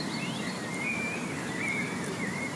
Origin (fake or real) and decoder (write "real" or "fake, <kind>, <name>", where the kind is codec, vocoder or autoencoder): fake, vocoder, BigVGAN v2